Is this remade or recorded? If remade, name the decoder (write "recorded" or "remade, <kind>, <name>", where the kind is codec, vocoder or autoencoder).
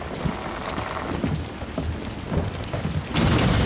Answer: recorded